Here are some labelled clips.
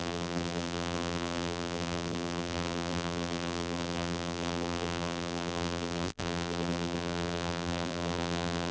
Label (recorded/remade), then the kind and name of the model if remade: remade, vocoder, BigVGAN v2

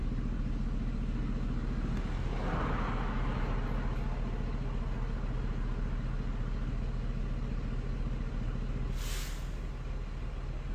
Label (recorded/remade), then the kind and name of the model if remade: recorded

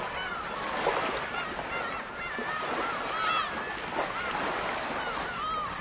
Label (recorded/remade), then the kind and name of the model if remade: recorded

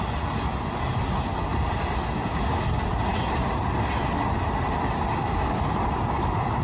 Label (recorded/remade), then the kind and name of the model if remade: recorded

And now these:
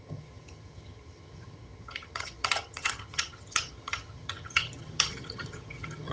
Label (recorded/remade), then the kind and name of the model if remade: remade, vocoder, HiFi-GAN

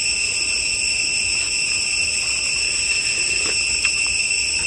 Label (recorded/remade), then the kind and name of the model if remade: recorded